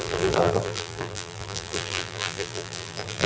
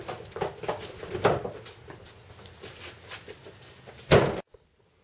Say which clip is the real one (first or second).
second